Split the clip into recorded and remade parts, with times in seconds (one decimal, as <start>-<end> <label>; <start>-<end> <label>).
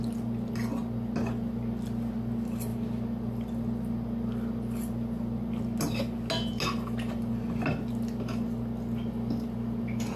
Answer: 0.0-10.2 recorded